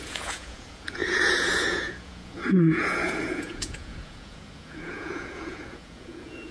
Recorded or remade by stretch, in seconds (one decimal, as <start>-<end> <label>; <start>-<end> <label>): 0.0-6.5 remade